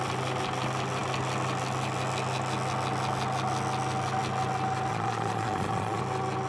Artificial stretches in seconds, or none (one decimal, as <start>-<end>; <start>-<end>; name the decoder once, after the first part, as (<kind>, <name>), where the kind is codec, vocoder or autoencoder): 4.9-6.0 (vocoder, Vocos)